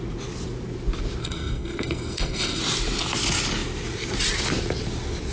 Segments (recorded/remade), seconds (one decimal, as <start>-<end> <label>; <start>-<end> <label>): 0.0-1.2 recorded; 1.2-2.6 remade; 2.6-5.3 recorded